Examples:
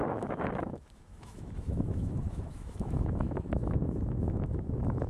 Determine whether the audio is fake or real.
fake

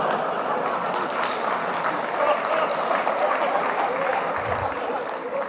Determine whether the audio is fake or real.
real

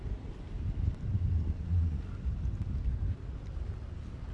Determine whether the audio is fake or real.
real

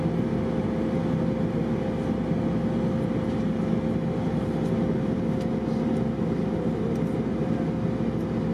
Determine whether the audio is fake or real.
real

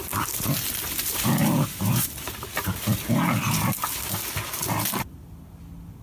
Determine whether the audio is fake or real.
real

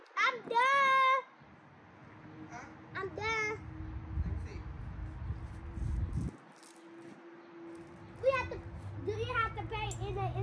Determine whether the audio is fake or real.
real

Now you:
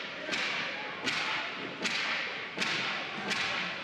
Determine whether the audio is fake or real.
real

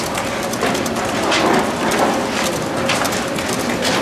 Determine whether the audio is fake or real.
real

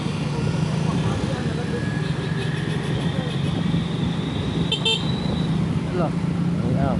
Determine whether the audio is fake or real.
real